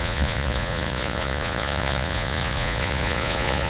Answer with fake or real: fake